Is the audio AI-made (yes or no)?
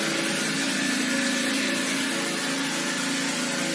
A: no